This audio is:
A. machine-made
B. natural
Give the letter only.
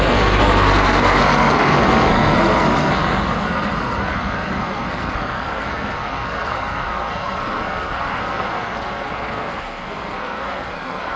A